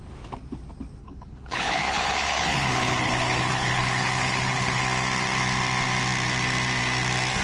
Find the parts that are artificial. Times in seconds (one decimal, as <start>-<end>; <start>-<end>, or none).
1.0-4.8